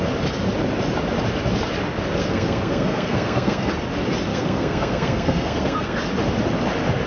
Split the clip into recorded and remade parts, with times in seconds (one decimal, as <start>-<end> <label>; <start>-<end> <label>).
0.0-2.2 recorded; 2.2-3.7 remade; 3.7-4.3 recorded; 4.3-6.0 remade; 6.0-7.1 recorded